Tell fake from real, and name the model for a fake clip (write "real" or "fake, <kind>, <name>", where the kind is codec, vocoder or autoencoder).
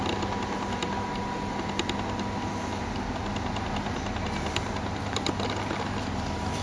real